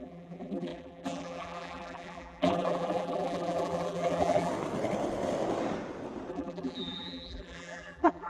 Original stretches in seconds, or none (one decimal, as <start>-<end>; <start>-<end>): 4.5-6.3